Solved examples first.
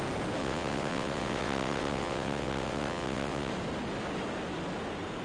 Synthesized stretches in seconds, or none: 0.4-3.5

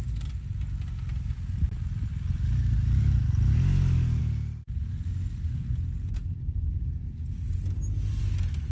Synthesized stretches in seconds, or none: none

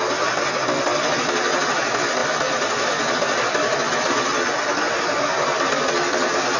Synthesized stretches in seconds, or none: none

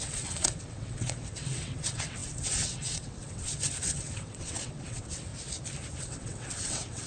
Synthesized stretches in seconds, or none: 0.0-5.3; 6.0-7.1

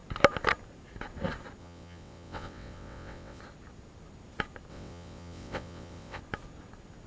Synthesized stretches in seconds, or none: 1.6-3.4; 4.7-6.2

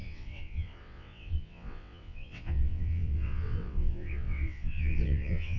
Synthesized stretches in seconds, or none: 0.0-5.6